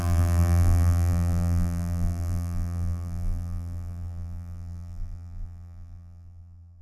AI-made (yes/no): yes